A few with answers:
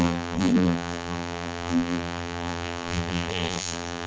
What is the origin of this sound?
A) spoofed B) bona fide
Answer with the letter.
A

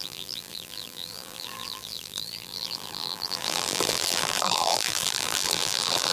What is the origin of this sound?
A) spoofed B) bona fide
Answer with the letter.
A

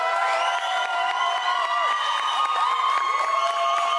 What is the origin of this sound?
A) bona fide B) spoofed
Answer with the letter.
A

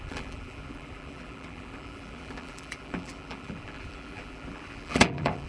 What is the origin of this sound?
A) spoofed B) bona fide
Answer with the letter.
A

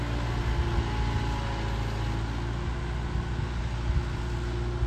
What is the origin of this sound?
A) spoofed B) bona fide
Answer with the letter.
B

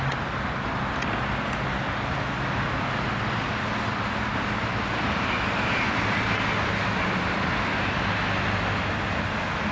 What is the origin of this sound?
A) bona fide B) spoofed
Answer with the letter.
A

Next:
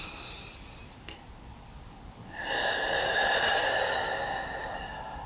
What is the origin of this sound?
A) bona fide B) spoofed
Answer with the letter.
B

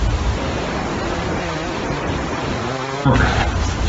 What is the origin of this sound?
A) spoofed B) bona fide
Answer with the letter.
B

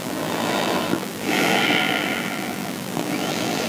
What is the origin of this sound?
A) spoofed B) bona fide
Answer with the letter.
A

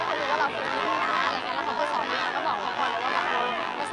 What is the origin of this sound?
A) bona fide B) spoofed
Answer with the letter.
B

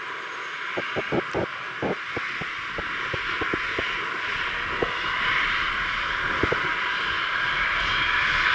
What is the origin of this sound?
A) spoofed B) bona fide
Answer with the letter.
B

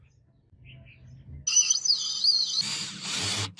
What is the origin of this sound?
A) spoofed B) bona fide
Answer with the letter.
B